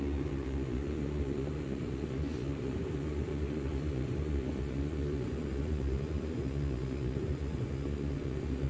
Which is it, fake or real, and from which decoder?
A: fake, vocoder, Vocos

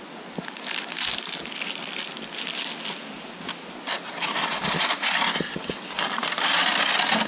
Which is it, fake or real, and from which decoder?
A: real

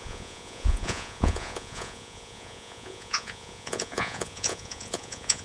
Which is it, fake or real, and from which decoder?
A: fake, vocoder, Vocos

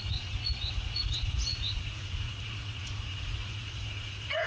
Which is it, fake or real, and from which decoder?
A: fake, vocoder, Vocos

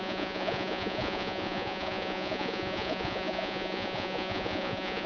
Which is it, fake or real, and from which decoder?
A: fake, vocoder, Vocos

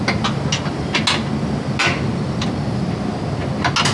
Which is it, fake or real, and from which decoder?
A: real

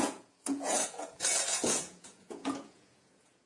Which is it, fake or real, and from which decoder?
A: fake, vocoder, Vocos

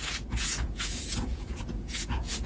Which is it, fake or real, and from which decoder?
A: fake, vocoder, Vocos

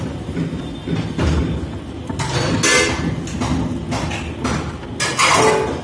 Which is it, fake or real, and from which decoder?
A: real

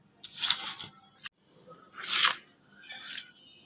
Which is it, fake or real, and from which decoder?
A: real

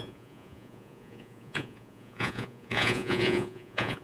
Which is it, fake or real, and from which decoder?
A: fake, vocoder, Vocos